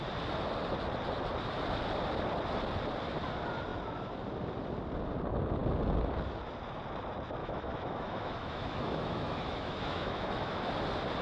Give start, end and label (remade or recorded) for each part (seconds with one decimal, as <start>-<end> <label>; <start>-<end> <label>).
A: 0.0-7.4 recorded; 7.4-10.6 remade; 10.6-11.2 recorded